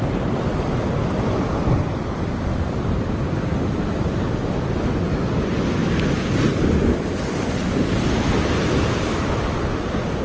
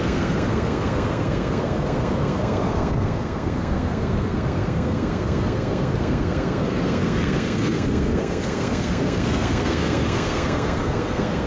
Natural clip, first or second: first